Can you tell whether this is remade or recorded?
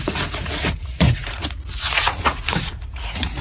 remade